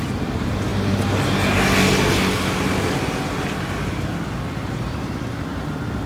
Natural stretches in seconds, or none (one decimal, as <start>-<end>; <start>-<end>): 0.0-6.1